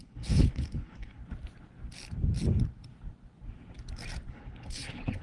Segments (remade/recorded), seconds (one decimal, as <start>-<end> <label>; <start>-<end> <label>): 0.0-1.2 remade; 1.2-4.3 recorded; 4.3-5.2 remade